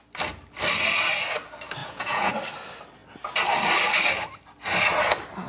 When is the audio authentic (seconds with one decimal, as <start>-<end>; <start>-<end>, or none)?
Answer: 0.0-1.8; 2.3-5.5